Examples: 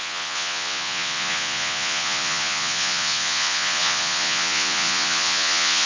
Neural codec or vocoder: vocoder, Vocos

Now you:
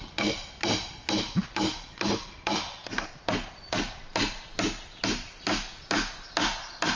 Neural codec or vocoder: none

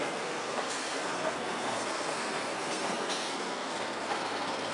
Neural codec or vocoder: codec, SNAC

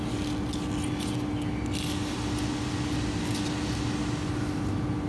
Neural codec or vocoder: none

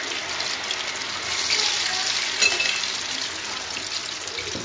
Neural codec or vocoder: none